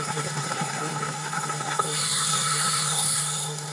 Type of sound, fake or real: fake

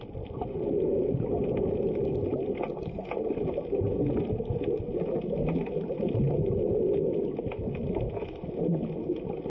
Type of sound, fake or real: real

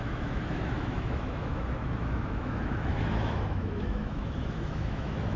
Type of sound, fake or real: fake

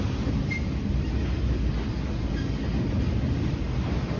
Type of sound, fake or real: real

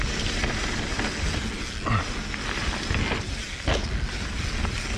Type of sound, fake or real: real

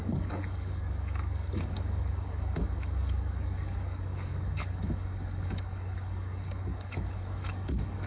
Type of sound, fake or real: fake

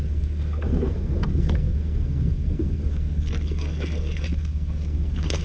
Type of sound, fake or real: fake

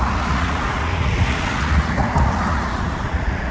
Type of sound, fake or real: fake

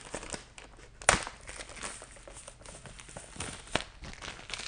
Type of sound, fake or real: real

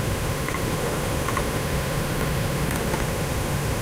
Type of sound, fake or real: fake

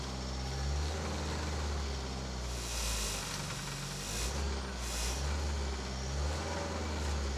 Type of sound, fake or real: real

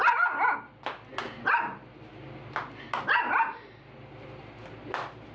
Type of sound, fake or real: real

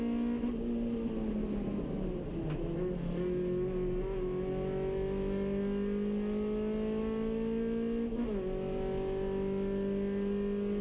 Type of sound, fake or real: real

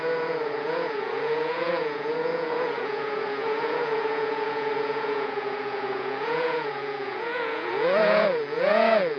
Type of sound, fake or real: fake